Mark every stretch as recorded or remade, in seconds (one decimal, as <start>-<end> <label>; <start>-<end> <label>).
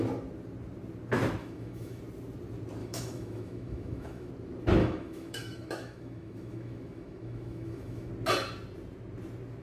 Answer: 0.0-1.4 recorded; 1.4-2.0 remade; 2.0-2.8 recorded; 2.8-4.3 remade; 4.3-4.8 recorded; 4.8-8.1 remade; 8.1-9.6 recorded